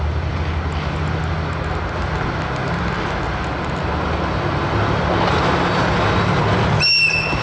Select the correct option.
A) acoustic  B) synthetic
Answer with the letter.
A